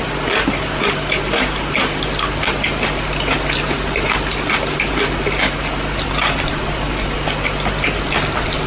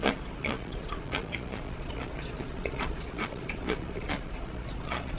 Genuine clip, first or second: first